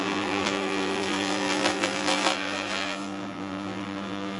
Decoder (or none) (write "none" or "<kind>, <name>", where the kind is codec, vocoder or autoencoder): vocoder, BigVGAN v2